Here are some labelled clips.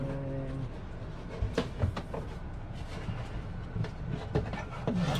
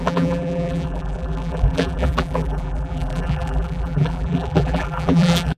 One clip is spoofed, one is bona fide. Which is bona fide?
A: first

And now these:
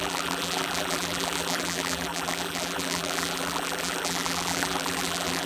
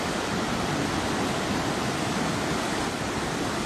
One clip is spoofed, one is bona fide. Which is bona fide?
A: second